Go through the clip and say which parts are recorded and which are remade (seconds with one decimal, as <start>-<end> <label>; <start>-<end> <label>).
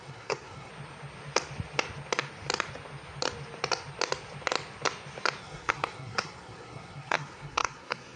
0.0-0.7 remade; 0.7-5.4 recorded; 5.4-8.2 remade